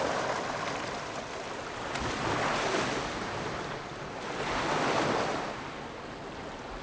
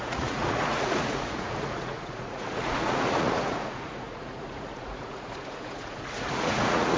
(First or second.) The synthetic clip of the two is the second